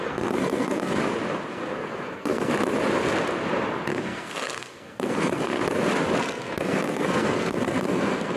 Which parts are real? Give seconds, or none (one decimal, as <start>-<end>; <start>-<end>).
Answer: 1.0-1.5; 2.5-3.9; 5.6-6.2